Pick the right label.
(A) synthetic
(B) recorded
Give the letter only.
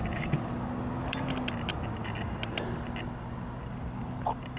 B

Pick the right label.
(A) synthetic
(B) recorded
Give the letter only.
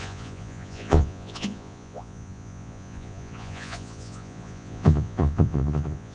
A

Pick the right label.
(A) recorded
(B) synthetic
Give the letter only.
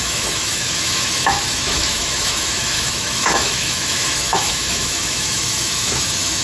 B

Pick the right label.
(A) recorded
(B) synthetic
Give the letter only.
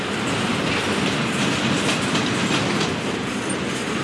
A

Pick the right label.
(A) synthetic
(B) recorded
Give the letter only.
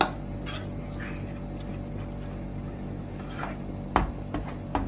B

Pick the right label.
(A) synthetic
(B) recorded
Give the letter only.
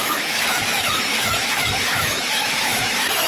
A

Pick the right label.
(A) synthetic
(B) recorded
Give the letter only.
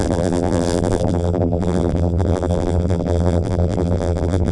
A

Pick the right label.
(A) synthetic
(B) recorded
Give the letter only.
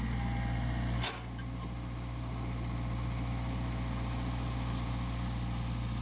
B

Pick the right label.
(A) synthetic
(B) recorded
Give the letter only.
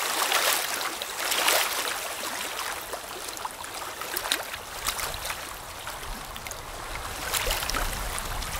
B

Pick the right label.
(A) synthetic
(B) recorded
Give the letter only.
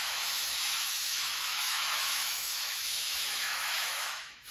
A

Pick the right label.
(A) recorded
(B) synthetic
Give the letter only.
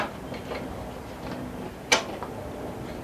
A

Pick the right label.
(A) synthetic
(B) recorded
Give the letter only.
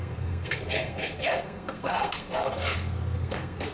A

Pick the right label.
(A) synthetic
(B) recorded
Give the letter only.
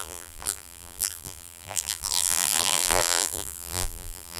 A